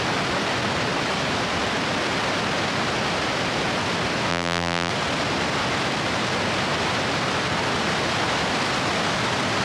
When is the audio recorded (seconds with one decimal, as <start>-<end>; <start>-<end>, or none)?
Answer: 0.0-4.3; 4.9-9.6

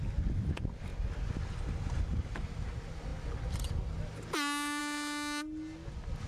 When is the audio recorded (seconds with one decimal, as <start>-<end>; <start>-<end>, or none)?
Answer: 0.0-0.9; 2.3-6.3

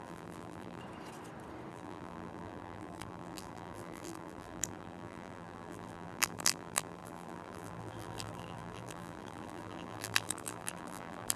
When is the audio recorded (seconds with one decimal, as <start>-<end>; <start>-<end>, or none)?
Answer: 0.8-1.7

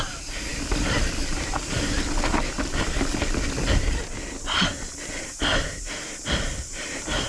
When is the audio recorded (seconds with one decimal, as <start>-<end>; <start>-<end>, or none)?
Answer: 0.0-0.5; 1.1-2.3; 2.8-7.3

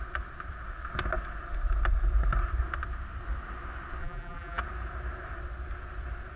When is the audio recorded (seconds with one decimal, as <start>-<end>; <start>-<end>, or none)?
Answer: 0.0-4.0; 4.6-6.4

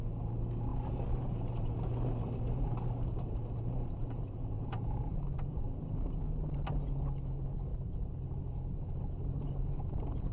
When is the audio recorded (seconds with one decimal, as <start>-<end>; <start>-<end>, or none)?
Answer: 0.0-0.7; 5.9-7.7; 8.4-10.3

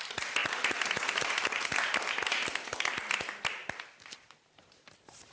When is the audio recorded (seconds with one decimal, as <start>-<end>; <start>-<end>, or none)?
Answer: 0.0-3.6